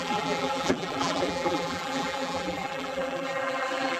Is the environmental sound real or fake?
fake